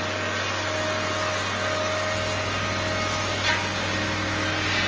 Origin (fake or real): real